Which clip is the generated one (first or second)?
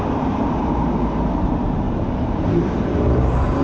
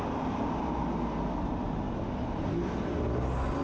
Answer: first